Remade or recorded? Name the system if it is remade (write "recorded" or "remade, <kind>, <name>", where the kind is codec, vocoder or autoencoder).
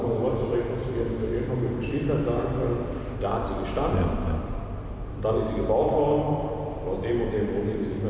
recorded